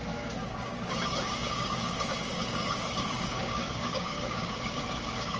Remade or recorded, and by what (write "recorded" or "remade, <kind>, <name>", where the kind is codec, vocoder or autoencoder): remade, codec, DAC